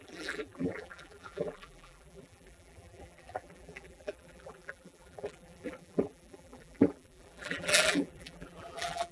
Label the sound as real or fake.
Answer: fake